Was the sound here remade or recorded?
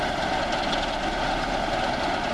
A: recorded